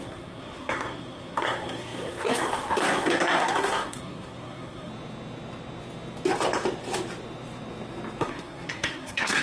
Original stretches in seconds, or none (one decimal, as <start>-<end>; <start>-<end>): 4.9-8.2